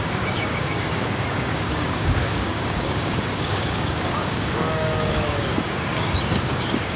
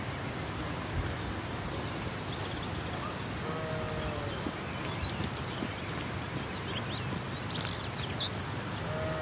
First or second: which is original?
second